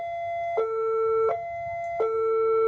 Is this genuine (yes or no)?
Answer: yes